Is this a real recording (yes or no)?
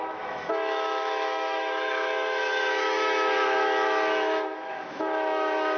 no